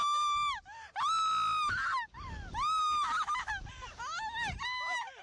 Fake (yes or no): no